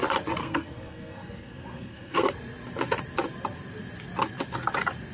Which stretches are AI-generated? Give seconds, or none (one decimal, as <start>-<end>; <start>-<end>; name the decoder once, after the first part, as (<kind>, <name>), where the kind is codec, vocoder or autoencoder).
0.4-2.3 (codec, SNAC)

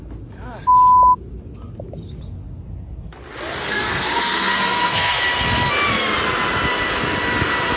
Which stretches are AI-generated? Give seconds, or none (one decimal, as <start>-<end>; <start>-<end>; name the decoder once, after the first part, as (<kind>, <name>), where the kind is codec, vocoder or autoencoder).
3.6-5.1 (codec, SNAC)

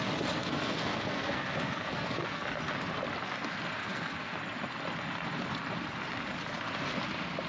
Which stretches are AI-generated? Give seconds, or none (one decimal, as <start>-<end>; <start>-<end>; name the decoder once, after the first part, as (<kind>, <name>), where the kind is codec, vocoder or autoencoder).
0.4-2.7 (codec, SNAC); 3.8-4.4

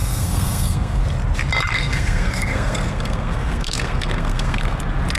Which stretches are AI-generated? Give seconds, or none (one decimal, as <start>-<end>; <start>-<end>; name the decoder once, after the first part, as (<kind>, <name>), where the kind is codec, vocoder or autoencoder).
0.0-1.0 (codec, SNAC); 1.7-4.8